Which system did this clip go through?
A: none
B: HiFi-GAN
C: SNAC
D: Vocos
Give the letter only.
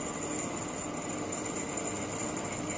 A